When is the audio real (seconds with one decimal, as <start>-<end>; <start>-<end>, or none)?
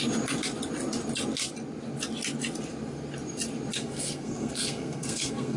0.0-3.7